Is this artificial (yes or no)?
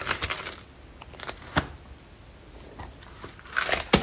no